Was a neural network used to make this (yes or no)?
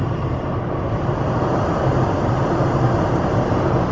no